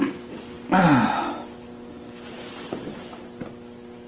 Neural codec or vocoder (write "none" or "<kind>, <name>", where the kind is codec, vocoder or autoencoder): none